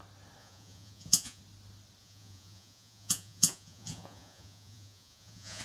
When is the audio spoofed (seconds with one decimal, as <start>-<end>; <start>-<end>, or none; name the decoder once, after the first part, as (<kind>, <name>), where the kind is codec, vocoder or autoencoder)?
0.4-1.4 (vocoder, Vocos); 2.0-5.6